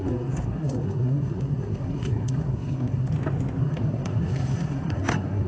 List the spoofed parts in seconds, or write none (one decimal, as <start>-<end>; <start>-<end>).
0.0-3.1; 3.6-5.5

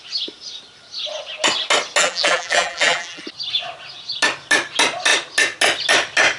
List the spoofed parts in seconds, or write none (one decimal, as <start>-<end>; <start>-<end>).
2.0-3.2